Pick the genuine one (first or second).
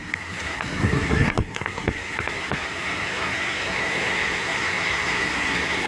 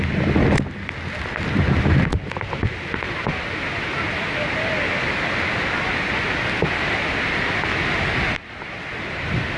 second